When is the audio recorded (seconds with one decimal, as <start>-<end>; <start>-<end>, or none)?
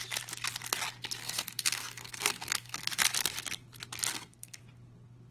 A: 0.0-1.2; 2.8-4.1; 4.6-5.3